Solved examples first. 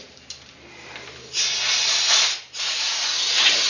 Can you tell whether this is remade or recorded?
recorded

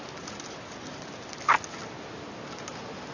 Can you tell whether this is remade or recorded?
recorded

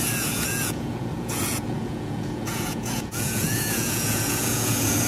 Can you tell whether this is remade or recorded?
remade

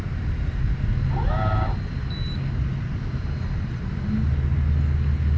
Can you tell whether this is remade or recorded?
recorded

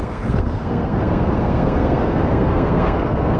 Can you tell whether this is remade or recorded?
remade